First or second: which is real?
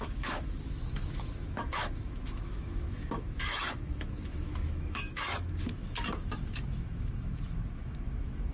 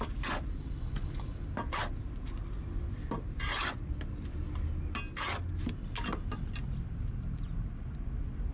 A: second